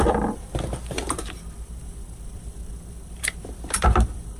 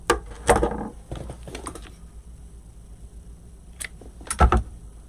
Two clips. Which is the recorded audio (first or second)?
second